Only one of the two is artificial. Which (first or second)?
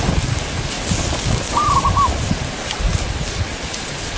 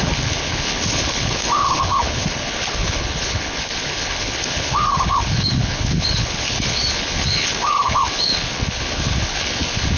second